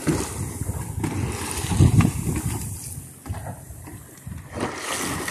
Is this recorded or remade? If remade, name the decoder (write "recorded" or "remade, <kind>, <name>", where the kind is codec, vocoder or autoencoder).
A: recorded